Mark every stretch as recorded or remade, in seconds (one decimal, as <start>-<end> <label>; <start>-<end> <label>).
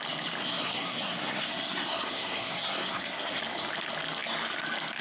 0.0-0.4 recorded; 0.4-3.4 remade; 3.4-5.0 recorded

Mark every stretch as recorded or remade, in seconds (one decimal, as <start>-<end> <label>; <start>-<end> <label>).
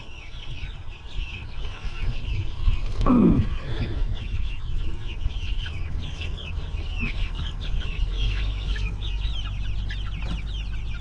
0.0-9.3 remade; 9.3-11.0 recorded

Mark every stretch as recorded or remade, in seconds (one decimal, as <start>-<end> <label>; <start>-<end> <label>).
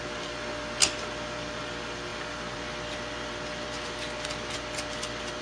0.0-5.4 recorded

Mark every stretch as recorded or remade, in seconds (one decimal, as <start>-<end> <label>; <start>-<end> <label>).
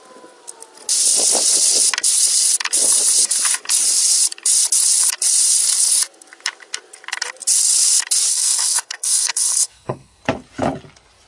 0.0-8.3 recorded; 8.3-10.2 remade; 10.2-11.3 recorded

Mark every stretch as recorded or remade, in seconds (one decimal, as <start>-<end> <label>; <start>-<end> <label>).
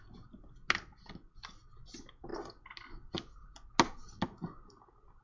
0.0-5.2 recorded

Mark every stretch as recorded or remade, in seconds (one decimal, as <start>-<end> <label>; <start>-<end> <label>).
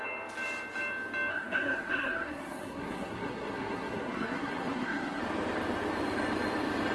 0.0-1.3 recorded; 1.3-5.2 remade; 5.2-6.9 recorded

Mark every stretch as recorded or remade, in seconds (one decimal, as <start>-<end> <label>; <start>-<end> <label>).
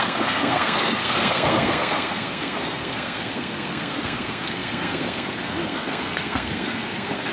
0.0-7.3 remade